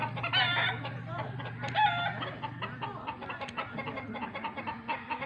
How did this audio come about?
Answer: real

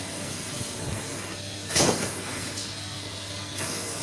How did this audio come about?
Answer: fake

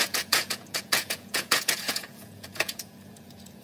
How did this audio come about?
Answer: fake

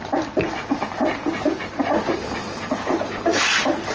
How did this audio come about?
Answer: real